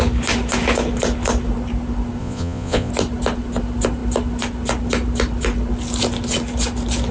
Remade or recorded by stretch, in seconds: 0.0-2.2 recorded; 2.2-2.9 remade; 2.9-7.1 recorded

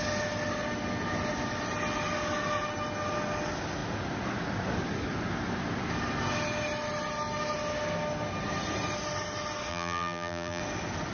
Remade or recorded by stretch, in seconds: 0.0-9.7 recorded; 9.7-10.6 remade; 10.6-11.1 recorded